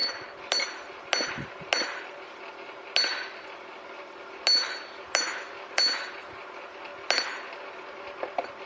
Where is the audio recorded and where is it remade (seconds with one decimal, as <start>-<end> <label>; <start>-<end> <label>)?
0.0-8.7 recorded